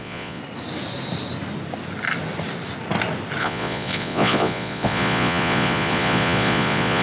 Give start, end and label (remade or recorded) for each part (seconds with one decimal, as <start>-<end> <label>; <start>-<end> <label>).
0.0-0.4 remade; 0.4-3.4 recorded; 3.4-7.0 remade